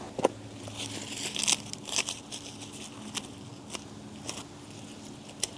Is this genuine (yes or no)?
yes